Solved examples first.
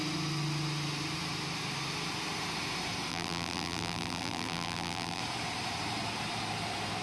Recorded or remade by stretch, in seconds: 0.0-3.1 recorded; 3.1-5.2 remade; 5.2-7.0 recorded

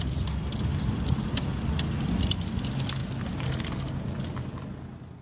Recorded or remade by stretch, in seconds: 0.0-1.5 recorded; 1.5-2.2 remade; 2.2-3.0 recorded; 3.0-4.8 remade; 4.8-5.2 recorded

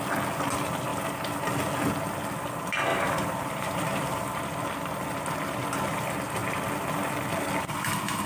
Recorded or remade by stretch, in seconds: 0.0-2.9 recorded; 2.9-4.4 remade; 4.4-8.3 recorded

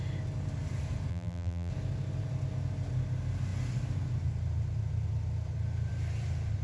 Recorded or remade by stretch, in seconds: 0.0-1.1 recorded; 1.1-1.7 remade; 1.7-6.6 recorded

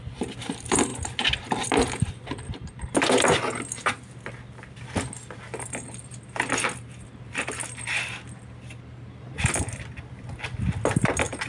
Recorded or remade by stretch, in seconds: 0.0-11.5 remade

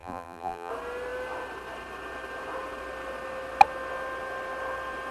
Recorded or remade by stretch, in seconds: 0.0-0.7 remade; 0.7-5.1 recorded

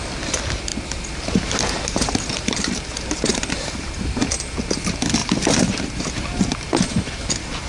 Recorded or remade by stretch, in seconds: 0.0-0.7 recorded; 0.7-4.3 remade; 4.3-5.2 recorded; 5.2-7.1 remade; 7.1-7.7 recorded

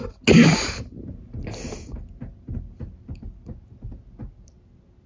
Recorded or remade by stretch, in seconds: 0.0-0.5 recorded; 0.5-1.0 remade; 1.0-5.1 recorded